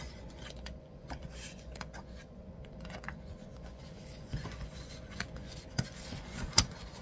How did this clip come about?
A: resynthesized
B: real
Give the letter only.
A